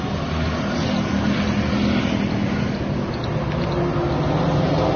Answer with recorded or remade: recorded